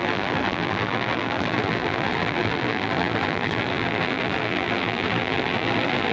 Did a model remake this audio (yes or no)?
yes